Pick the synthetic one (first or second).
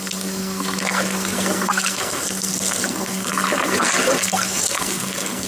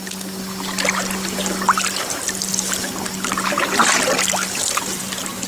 first